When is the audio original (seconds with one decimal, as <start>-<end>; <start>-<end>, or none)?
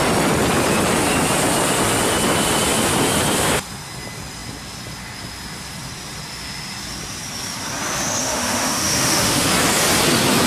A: 0.0-8.2; 9.5-10.5